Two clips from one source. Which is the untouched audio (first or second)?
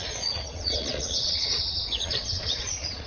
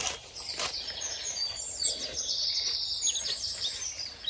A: second